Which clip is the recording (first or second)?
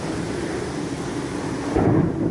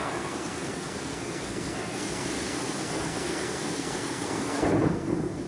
first